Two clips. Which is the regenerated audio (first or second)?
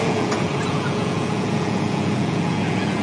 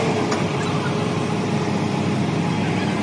first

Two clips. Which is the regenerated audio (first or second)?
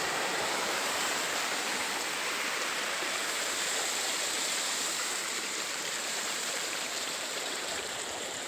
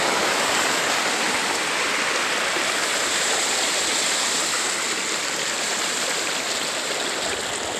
first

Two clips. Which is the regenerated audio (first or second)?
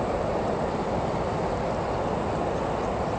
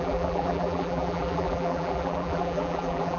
second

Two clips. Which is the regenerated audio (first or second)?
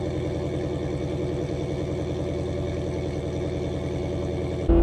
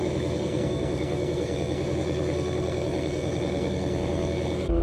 second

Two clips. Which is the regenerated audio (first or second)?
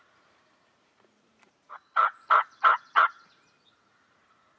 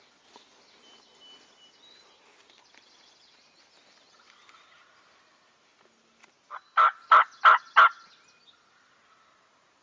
first